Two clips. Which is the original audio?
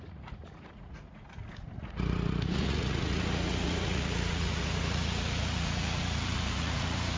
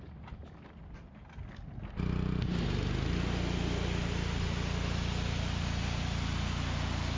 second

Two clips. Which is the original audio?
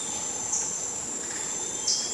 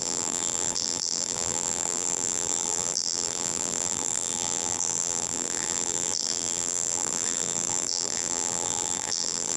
first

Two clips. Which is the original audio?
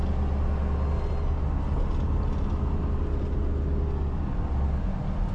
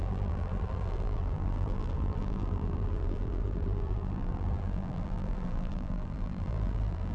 first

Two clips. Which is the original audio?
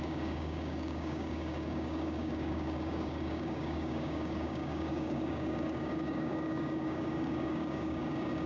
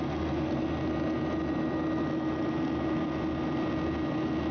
second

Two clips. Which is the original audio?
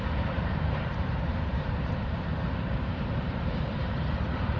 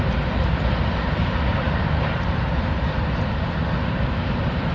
second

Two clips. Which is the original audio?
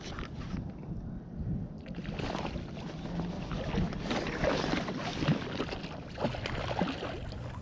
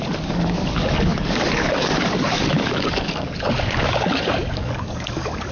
first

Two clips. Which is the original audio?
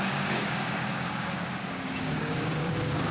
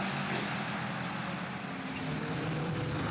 second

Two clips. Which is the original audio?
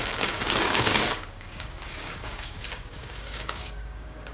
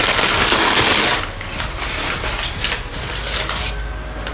second